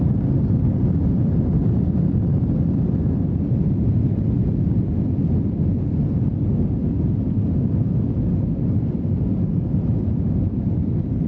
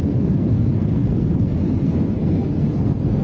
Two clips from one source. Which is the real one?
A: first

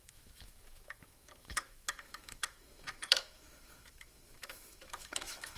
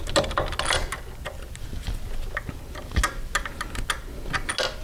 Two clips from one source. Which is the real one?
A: second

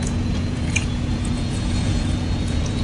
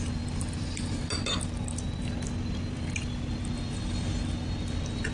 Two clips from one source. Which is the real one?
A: second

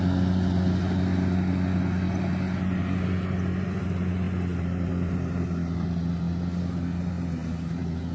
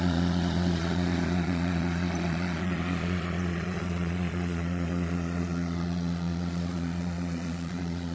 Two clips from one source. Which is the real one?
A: first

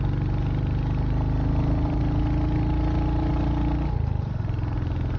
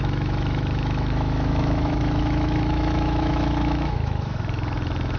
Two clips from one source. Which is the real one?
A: first